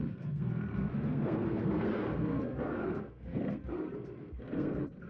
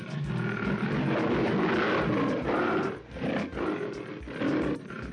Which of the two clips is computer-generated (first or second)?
first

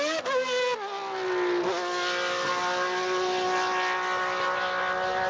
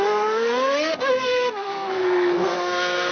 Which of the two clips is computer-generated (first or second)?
second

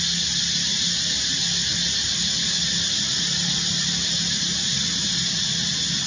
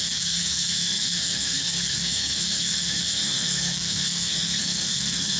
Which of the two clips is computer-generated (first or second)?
second